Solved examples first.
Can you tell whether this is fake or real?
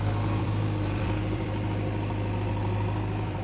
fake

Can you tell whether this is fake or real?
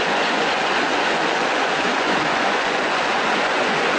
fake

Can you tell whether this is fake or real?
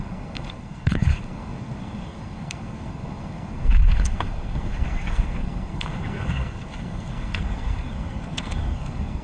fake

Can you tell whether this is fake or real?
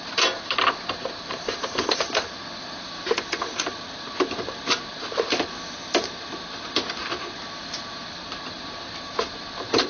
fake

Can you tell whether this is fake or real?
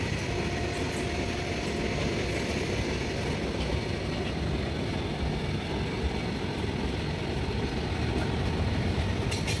real